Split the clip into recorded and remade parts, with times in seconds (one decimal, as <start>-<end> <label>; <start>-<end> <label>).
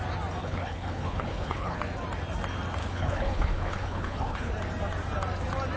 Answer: 0.0-0.4 recorded; 0.4-1.8 remade; 1.8-2.8 recorded; 2.8-4.5 remade; 4.5-5.8 recorded